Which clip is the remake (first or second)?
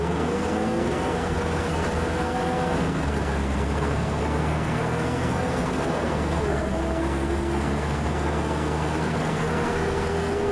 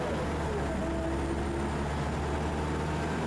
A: first